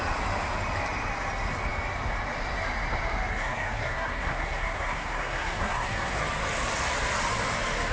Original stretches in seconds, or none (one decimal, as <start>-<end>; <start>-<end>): 0.0-3.4; 6.2-7.9